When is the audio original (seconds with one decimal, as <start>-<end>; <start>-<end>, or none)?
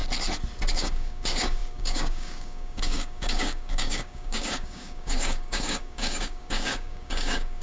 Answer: 0.0-0.7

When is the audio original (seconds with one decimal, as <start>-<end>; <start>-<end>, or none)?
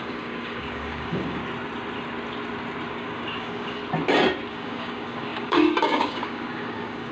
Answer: 1.4-2.9; 3.8-4.5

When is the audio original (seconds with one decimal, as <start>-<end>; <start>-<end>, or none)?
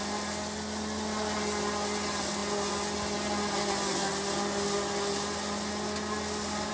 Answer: 0.0-6.7